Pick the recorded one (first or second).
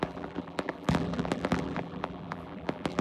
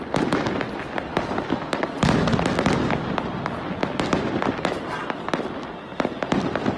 second